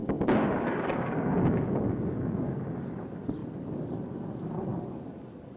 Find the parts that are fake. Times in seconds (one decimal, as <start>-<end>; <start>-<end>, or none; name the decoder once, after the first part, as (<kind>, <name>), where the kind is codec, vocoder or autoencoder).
0.0-3.0 (codec, DAC)